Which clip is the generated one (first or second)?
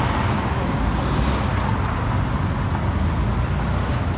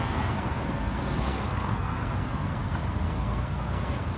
second